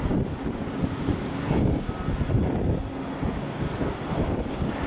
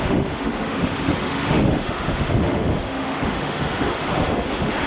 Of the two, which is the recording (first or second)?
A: first